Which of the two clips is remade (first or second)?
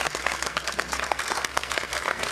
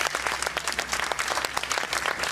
first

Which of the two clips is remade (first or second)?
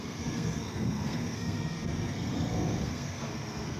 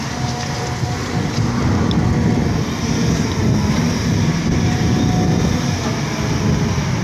first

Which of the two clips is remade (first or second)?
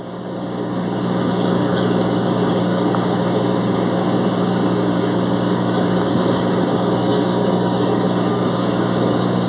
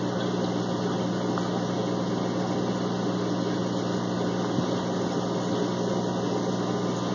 first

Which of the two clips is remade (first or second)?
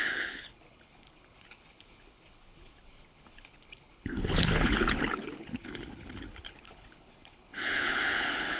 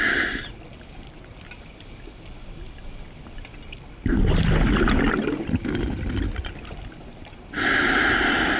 first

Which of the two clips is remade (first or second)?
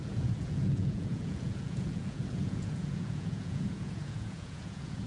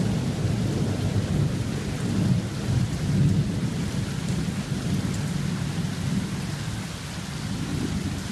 first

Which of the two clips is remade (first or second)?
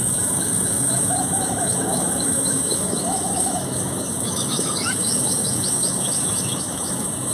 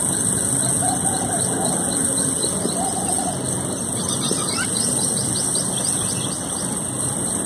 first